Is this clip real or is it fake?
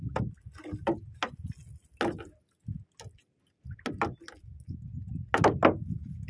real